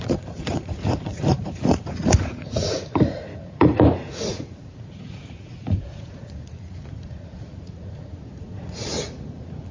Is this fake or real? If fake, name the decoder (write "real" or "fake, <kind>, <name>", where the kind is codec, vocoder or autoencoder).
fake, vocoder, Vocos